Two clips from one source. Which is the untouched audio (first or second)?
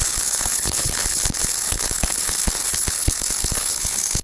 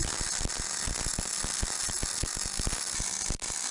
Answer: second